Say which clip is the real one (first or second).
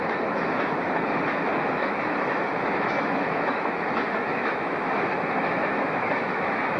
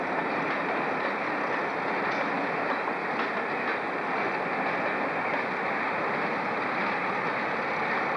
second